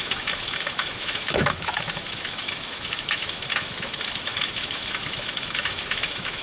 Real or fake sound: fake